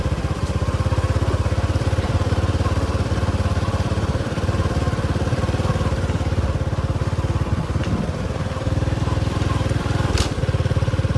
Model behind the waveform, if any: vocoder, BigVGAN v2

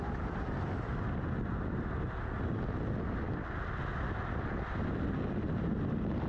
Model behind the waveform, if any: none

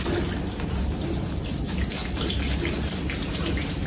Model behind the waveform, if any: none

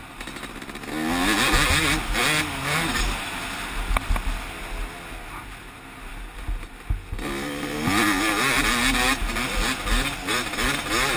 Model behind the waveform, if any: none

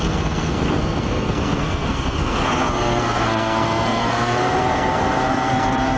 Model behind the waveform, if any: codec, SNAC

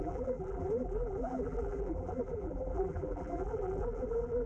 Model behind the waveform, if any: vocoder, BigVGAN v2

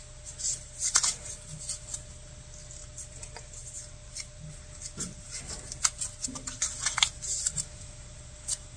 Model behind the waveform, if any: none